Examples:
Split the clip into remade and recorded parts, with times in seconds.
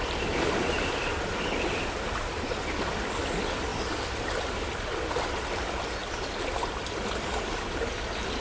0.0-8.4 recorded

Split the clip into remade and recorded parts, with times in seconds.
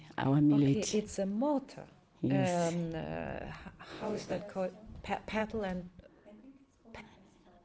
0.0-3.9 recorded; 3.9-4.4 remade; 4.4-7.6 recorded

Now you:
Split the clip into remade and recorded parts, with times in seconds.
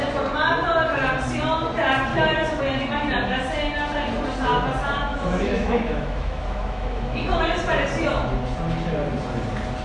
0.0-2.1 recorded; 2.1-2.6 remade; 2.6-5.1 recorded; 5.1-7.4 remade; 7.4-9.8 recorded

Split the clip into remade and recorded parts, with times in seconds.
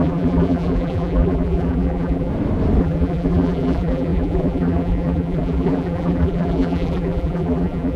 0.0-2.3 remade; 2.3-2.8 recorded; 2.8-8.0 remade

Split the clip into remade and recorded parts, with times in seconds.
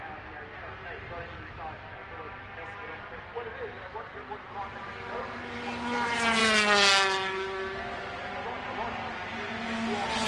0.0-10.3 recorded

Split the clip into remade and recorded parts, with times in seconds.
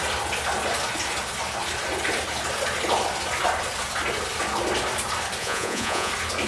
0.0-5.4 recorded; 5.4-6.1 remade; 6.1-6.5 recorded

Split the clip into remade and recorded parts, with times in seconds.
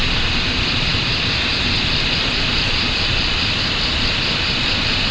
0.0-5.1 recorded